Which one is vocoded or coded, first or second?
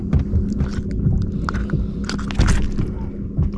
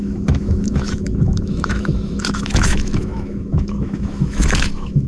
second